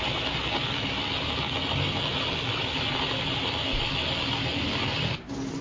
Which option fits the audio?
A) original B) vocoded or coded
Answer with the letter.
A